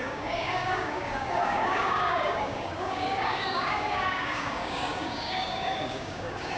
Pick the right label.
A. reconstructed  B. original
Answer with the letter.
A